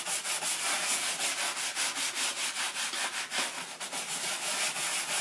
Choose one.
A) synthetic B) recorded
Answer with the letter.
B